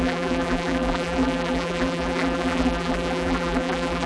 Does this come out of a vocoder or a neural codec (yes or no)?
yes